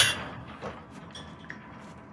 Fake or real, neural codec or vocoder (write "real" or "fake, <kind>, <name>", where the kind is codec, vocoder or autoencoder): real